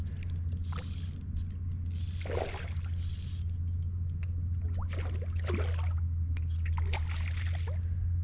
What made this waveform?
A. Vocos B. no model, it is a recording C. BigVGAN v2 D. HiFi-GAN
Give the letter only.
B